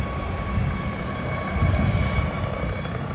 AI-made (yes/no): no